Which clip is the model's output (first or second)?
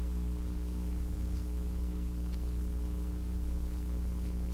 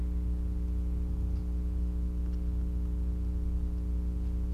first